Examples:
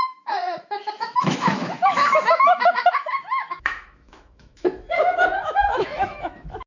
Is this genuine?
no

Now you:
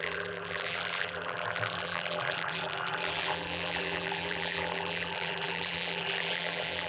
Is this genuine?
no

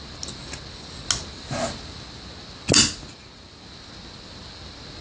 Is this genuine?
yes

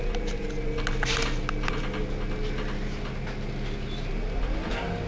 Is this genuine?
yes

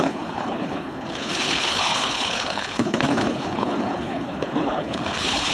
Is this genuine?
no